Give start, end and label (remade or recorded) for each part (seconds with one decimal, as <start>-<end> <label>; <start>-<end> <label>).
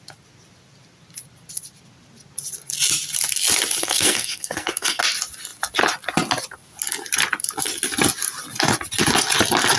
0.0-3.8 recorded; 3.8-5.0 remade; 5.0-9.8 recorded